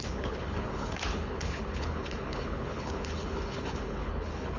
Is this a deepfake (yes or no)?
yes